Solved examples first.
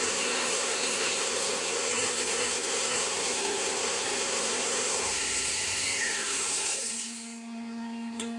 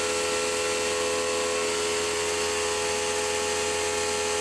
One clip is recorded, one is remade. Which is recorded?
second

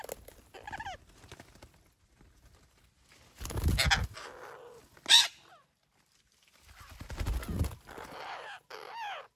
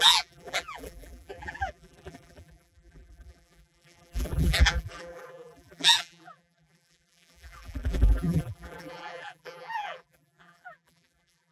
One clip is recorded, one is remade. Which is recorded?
first